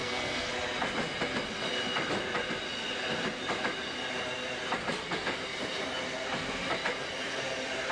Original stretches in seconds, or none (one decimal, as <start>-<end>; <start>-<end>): 0.5-7.9